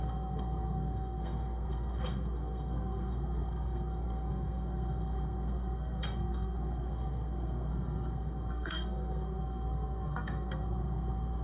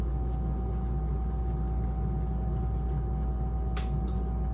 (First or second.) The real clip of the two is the second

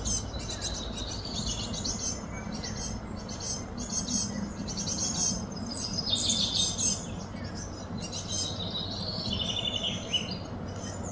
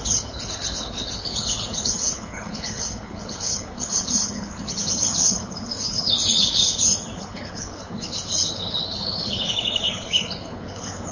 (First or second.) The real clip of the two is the first